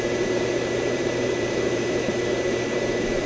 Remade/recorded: remade